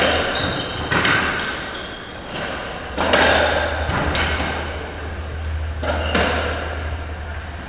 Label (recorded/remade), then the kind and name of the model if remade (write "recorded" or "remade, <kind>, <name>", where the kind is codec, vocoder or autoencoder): recorded